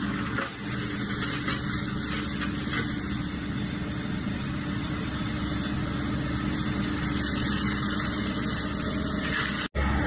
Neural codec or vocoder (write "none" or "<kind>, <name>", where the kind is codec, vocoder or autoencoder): none